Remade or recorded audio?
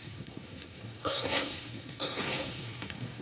remade